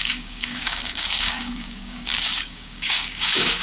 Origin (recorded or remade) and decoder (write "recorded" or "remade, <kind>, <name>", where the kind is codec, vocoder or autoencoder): remade, codec, DAC